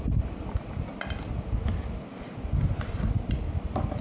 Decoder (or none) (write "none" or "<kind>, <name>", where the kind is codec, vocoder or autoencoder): none